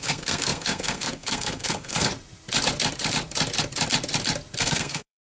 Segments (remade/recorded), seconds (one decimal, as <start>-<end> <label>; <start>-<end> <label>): 0.0-2.1 remade; 2.1-4.6 recorded; 4.6-5.3 remade